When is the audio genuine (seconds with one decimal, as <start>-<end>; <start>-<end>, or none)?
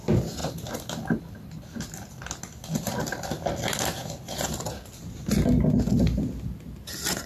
0.0-7.3